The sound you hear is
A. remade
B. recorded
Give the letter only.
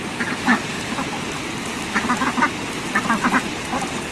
A